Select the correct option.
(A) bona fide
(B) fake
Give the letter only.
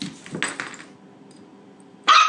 A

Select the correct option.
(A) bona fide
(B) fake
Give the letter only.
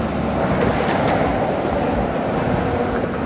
A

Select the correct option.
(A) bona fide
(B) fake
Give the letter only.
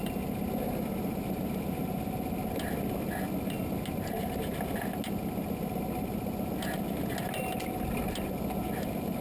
A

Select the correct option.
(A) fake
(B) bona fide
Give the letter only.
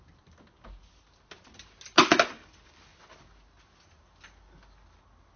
B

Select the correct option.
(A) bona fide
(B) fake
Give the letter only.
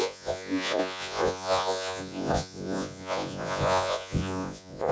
B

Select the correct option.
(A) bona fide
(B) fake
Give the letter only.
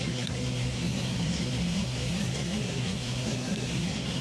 B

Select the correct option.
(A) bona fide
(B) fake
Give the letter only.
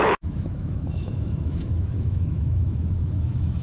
B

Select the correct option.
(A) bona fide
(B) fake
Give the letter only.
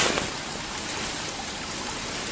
A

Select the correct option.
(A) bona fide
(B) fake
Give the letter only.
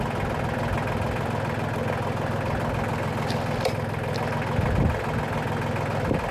A